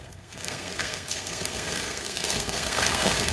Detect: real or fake fake